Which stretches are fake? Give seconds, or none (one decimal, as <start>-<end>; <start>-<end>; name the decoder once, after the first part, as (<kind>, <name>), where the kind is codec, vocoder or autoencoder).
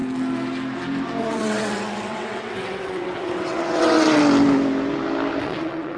1.2-4.2 (vocoder, WaveNeXt); 5.4-6.0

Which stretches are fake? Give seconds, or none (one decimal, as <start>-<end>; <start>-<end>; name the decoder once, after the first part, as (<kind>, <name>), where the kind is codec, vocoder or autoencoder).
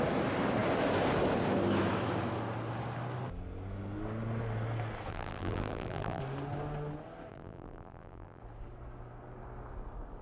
5.1-6.2 (vocoder, BigVGAN v2); 7.3-8.4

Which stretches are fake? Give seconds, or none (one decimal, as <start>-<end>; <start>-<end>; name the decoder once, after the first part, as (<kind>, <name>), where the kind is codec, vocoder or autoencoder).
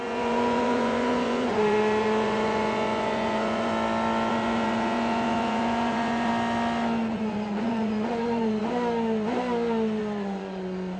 0.0-3.7 (vocoder, Vocos); 4.3-6.3; 7.1-8.6; 10.0-11.0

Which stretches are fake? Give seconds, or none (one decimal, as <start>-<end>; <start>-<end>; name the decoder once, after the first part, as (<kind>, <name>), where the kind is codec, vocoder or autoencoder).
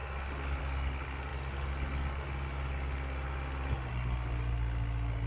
none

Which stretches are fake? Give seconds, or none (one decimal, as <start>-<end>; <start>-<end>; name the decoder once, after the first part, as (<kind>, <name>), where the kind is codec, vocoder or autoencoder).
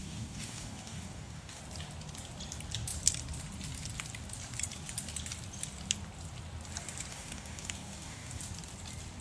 0.0-1.6 (codec, DAC); 7.1-8.4